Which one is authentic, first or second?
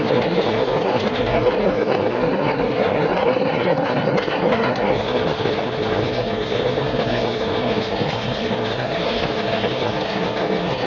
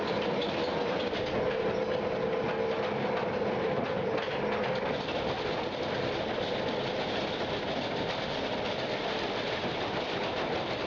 second